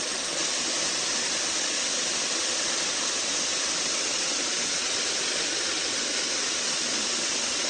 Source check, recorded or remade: recorded